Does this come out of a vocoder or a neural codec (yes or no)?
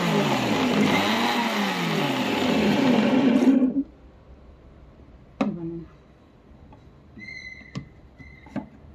no